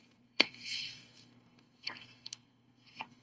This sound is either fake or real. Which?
fake